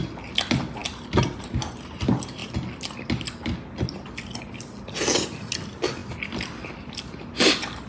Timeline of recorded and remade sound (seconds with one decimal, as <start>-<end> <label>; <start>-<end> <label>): 0.0-7.9 recorded